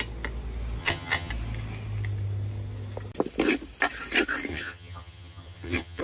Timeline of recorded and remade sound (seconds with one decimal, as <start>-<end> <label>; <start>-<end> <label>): 0.0-0.8 recorded; 0.8-1.3 remade; 1.3-4.5 recorded; 4.5-6.0 remade